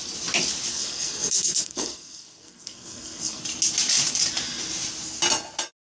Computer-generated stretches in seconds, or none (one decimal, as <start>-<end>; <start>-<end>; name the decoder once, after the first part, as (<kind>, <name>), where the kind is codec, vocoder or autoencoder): 0.7-3.4 (codec, SNAC)